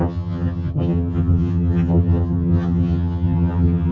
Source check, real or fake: fake